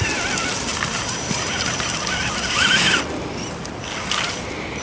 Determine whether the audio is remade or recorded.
recorded